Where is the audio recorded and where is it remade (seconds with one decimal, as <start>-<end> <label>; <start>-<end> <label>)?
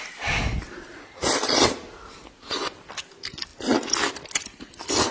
0.0-5.1 recorded